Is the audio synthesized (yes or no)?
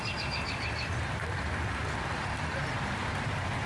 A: no